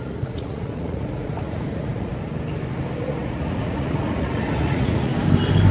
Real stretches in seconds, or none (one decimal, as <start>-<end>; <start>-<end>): 2.1-3.0; 5.1-5.7